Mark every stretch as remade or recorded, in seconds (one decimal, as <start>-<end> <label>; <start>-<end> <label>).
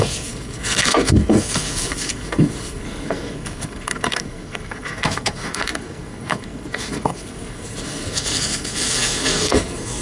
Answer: 0.0-10.0 remade